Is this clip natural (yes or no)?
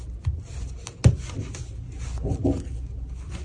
yes